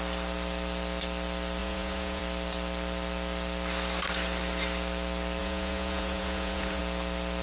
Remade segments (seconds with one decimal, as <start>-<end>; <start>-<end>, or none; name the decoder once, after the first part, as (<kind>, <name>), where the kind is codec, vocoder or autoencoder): 1.6-2.2 (vocoder, Vocos); 5.4-6.8